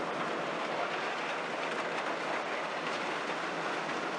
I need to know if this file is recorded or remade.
recorded